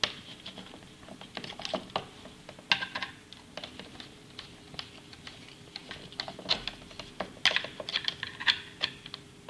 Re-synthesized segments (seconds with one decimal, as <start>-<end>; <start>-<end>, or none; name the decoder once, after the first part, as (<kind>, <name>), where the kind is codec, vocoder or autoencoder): none